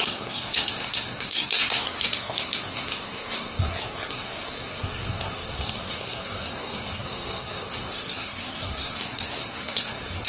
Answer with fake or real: fake